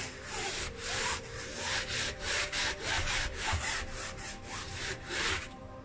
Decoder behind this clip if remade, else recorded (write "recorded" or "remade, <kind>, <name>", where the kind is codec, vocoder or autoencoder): remade, vocoder, BigVGAN v2